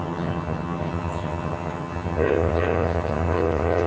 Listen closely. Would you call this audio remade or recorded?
remade